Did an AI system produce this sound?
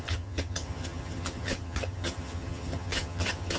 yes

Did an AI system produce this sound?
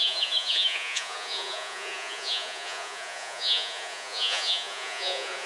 yes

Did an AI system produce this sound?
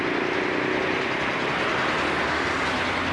no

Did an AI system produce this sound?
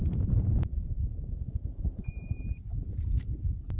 yes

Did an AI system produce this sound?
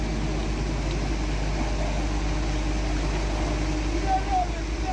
no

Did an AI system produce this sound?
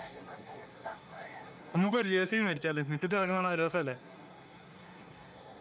yes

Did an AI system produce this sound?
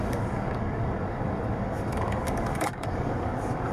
yes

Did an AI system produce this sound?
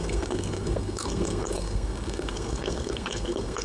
yes